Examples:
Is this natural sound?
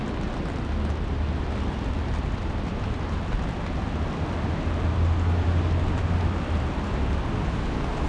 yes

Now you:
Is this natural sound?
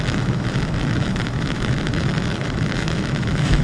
no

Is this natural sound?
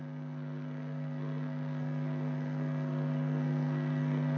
no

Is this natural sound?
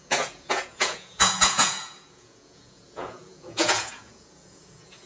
no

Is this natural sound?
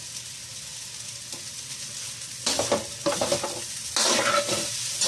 yes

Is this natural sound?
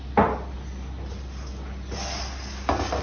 yes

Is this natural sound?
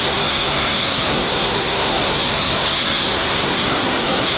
no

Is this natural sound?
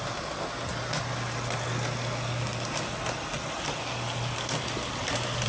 yes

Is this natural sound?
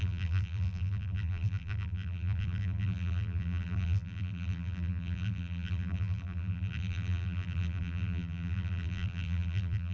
no